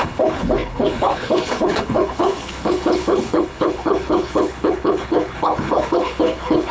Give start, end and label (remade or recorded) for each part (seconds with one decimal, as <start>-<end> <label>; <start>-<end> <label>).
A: 0.0-6.7 remade